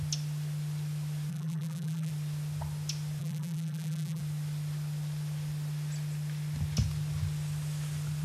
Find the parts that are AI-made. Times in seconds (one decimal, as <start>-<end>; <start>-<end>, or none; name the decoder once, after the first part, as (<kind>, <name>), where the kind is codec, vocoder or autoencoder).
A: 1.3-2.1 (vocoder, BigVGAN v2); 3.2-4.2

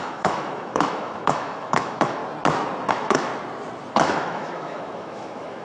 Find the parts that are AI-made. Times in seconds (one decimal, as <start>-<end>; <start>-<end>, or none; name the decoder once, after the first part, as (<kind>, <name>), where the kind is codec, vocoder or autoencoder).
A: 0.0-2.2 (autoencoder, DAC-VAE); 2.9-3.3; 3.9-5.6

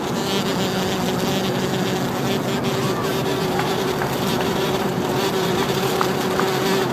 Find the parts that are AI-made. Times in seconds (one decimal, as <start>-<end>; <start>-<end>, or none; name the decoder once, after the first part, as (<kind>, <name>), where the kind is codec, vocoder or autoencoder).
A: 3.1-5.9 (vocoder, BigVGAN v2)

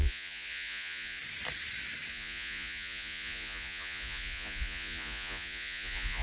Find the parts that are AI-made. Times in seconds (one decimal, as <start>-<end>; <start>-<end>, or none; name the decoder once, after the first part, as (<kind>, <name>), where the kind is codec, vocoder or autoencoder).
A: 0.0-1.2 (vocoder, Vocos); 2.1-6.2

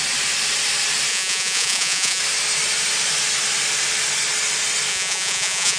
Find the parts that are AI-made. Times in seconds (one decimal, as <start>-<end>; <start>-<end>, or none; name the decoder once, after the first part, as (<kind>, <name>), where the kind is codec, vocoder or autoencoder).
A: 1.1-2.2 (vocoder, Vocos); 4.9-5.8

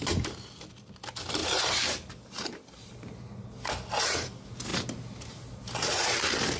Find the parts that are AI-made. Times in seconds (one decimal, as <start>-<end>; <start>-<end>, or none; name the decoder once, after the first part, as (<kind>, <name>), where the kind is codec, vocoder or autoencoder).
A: 1.4-3.3 (vocoder, BigVGAN v2)

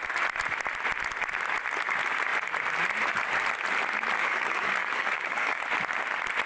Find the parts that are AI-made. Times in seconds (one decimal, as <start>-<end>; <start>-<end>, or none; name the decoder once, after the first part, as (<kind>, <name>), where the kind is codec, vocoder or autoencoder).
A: 4.2-5.6 (codec, DAC)